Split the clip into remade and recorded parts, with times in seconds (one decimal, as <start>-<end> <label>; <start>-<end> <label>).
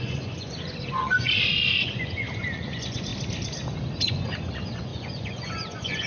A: 0.0-3.1 remade; 3.1-4.0 recorded; 4.0-6.1 remade